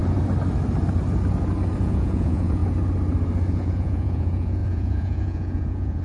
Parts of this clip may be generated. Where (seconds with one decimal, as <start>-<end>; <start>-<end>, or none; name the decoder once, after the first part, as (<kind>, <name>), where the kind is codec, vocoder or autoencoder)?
1.8-2.6 (vocoder, Vocos); 3.5-6.0